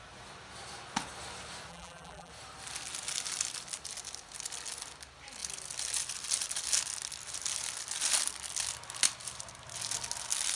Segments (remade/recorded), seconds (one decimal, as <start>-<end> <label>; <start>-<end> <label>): 0.0-1.7 recorded; 1.7-2.3 remade; 2.3-10.6 recorded